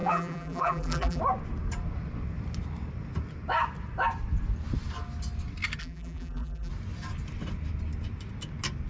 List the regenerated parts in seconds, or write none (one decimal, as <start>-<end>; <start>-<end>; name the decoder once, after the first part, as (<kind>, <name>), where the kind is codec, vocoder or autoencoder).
0.0-1.2 (vocoder, BigVGAN v2); 5.8-6.7